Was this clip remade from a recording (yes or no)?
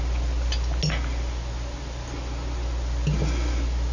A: no